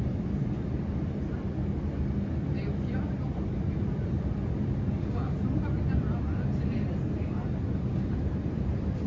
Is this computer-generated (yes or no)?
no